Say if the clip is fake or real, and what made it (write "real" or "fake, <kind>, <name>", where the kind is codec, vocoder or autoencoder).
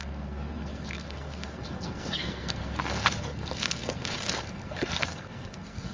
fake, codec, SNAC